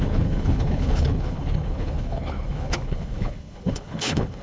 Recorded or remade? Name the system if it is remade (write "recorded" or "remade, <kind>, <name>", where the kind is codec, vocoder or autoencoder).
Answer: remade, codec, HILCodec